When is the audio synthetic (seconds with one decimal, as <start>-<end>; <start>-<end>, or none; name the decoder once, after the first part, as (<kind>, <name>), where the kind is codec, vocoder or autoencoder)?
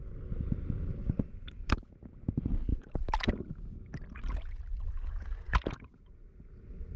1.0-2.2 (vocoder, BigVGAN v2); 2.7-3.3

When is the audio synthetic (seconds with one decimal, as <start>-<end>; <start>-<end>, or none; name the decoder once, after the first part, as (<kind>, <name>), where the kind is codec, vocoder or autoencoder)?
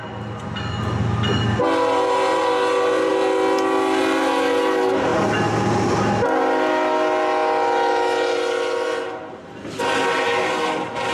none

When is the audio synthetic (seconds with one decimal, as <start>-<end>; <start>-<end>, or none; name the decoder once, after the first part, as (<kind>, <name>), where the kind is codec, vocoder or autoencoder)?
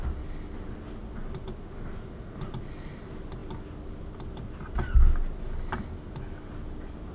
none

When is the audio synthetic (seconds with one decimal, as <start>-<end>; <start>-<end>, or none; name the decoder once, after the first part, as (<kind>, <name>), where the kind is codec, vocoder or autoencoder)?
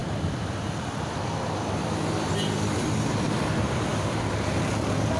2.3-5.2 (vocoder, BigVGAN v2)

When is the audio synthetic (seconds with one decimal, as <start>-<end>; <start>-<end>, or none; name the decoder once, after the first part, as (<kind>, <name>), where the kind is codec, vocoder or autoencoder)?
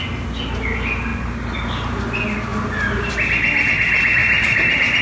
1.1-2.0 (vocoder, BigVGAN v2); 2.5-3.1; 4.2-5.0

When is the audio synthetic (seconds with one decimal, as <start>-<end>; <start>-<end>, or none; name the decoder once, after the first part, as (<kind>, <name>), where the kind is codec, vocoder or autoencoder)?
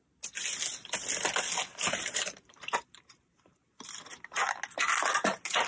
1.7-3.6 (vocoder, BigVGAN v2)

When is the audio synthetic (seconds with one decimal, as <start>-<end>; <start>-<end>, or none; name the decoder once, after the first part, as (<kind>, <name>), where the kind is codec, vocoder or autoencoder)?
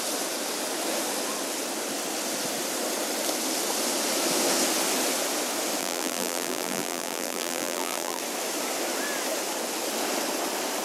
5.8-8.2 (vocoder, BigVGAN v2)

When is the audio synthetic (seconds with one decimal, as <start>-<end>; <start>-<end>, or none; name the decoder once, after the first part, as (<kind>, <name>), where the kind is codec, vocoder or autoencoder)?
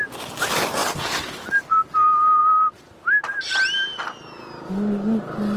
0.8-1.3 (vocoder, BigVGAN v2)